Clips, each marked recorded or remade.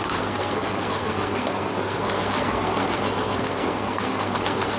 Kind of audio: remade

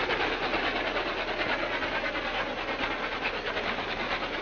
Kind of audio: recorded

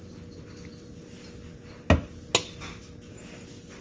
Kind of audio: recorded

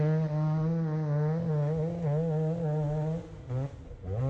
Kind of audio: recorded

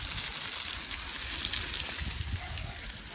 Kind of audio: recorded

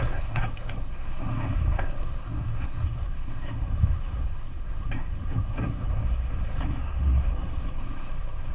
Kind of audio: remade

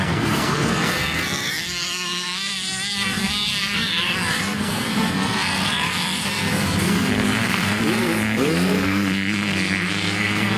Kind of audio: remade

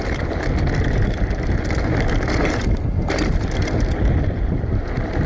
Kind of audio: recorded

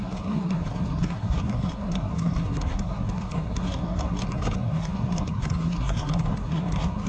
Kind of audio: remade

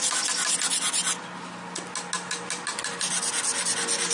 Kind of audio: recorded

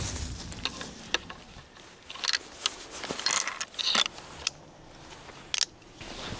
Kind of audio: recorded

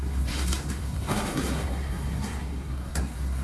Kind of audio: remade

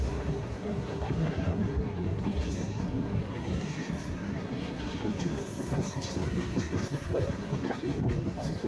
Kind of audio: remade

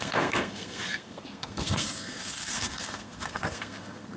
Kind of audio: remade